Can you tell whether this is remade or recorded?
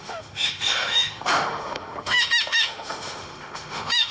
remade